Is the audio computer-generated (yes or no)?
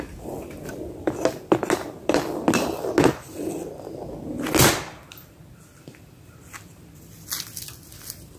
no